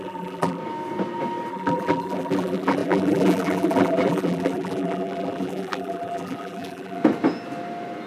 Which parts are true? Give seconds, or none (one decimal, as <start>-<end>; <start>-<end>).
0.6-1.5; 7.0-8.1